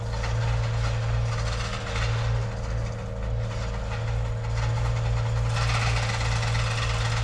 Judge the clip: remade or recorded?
recorded